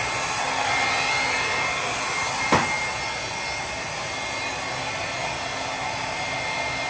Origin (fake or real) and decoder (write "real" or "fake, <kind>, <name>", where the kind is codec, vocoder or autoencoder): real